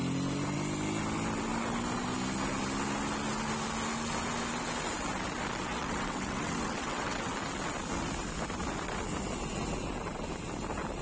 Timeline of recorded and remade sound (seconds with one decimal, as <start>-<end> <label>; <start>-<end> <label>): 0.0-5.7 recorded; 5.7-7.3 remade; 7.3-11.0 recorded